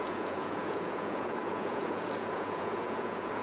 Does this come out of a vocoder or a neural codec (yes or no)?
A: yes